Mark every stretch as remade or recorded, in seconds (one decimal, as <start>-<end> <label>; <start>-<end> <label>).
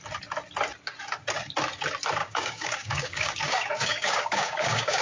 0.0-2.2 recorded; 2.2-5.0 remade